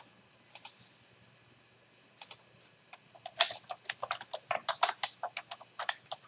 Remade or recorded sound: recorded